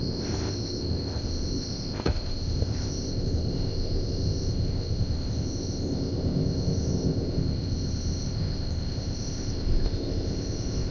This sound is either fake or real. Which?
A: fake